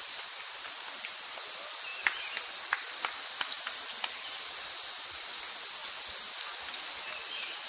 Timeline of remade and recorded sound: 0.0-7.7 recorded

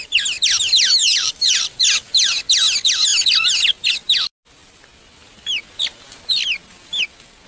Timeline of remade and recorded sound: 0.0-1.1 recorded; 1.1-1.7 remade; 1.7-7.5 recorded